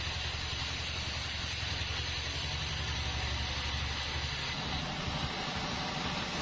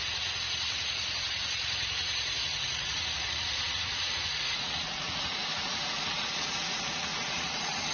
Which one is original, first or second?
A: first